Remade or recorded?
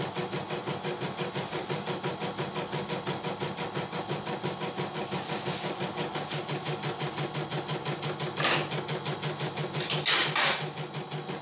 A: recorded